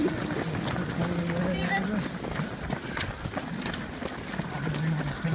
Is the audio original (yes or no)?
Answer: yes